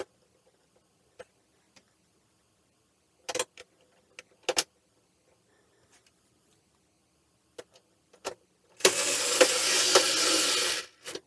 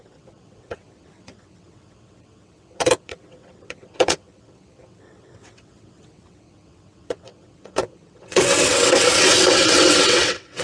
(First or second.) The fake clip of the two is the second